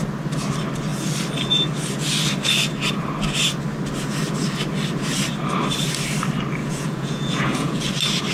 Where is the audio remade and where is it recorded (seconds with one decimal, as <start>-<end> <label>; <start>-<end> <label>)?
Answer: 0.0-6.6 recorded; 6.6-7.8 remade; 7.8-8.3 recorded